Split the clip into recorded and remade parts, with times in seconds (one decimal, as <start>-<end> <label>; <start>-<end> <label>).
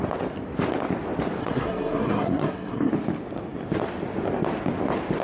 0.0-1.4 recorded; 1.4-2.9 remade; 2.9-5.2 recorded